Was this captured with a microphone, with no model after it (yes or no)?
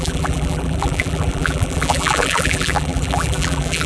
no